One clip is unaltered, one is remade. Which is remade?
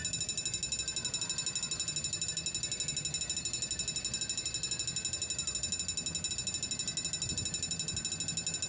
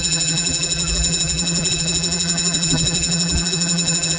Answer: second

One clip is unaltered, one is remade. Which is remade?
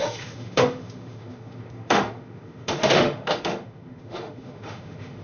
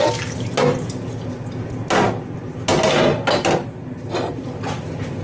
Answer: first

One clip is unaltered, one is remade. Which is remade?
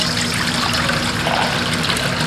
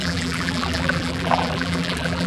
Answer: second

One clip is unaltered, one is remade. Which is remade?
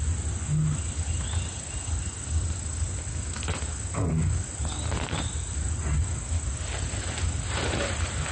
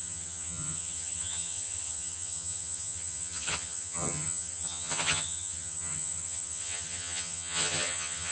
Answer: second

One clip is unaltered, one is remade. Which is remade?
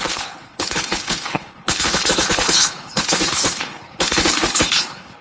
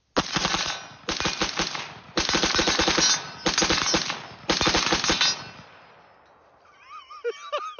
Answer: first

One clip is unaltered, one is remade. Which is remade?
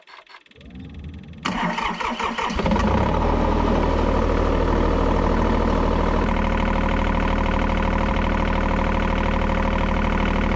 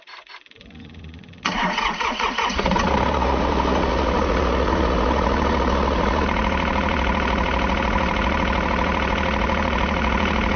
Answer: second